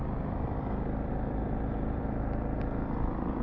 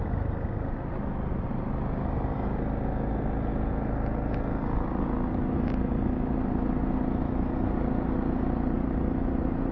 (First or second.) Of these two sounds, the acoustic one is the second